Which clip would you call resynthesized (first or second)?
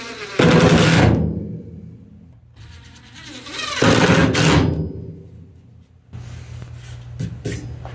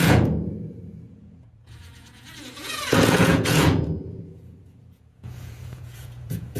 second